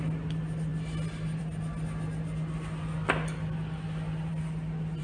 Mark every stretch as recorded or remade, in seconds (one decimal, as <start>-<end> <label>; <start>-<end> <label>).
0.0-5.0 recorded